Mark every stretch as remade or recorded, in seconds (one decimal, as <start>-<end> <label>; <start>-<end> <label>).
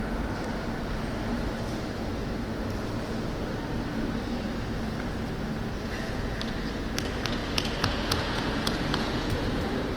0.0-5.6 recorded; 5.6-6.4 remade; 6.4-7.4 recorded; 7.4-10.0 remade